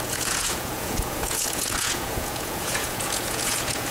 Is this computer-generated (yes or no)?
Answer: yes